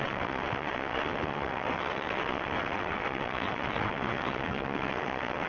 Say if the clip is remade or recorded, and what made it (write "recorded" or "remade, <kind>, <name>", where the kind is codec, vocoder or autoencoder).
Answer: remade, vocoder, WaveNeXt